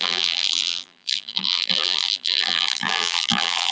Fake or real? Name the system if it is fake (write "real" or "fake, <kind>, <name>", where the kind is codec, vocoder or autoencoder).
fake, vocoder, BigVGAN v2